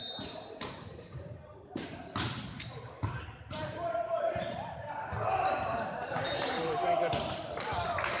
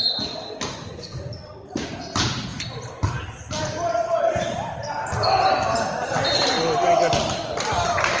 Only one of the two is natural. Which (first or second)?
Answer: second